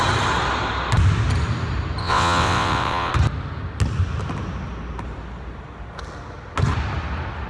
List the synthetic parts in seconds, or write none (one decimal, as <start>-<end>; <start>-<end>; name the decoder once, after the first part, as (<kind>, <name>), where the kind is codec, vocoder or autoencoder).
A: 2.0-3.1 (vocoder, WaveNeXt)

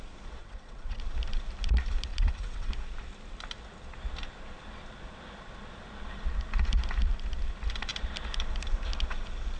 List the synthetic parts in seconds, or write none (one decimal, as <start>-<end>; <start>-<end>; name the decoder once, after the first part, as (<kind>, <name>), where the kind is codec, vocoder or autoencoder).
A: 0.4-1.0 (vocoder, WaveNeXt); 2.1-2.7

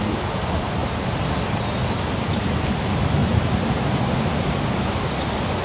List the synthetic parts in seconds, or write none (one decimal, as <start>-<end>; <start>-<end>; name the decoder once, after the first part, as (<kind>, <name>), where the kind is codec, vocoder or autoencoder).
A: none

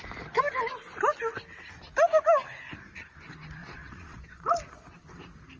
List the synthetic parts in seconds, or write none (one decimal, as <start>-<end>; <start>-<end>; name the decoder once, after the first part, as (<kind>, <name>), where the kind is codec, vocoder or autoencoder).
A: 3.6-4.6 (vocoder, WaveNeXt)

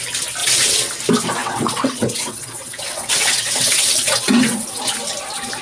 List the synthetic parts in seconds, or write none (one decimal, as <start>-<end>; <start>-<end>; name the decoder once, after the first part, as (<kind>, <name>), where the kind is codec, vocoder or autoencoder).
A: 0.4-0.9 (vocoder, WaveNeXt); 1.4-4.8

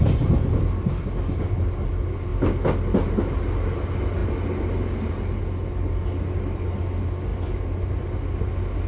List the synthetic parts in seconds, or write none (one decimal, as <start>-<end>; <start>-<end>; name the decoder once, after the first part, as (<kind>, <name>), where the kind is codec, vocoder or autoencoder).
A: none